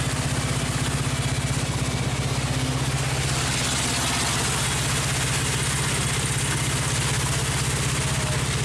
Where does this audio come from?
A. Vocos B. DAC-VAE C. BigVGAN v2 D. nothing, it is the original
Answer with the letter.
D